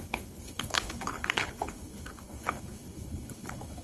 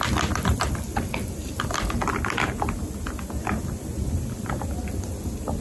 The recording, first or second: second